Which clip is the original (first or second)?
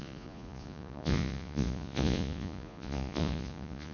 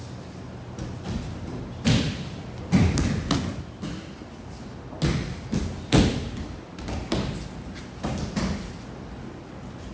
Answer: second